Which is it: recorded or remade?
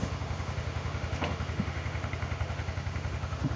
remade